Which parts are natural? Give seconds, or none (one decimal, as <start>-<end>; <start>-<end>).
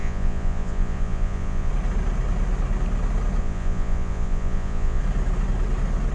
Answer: 1.7-3.4; 5.0-6.1